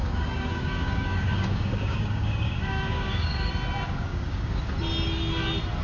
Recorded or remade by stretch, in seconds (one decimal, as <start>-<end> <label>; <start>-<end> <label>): 0.0-3.5 remade; 3.5-4.1 recorded; 4.1-4.6 remade; 4.6-5.8 recorded